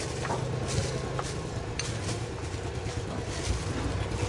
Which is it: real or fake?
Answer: real